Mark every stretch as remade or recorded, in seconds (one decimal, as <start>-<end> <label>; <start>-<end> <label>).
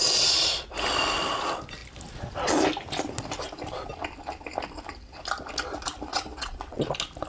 0.0-6.1 recorded; 6.1-6.8 remade; 6.8-7.3 recorded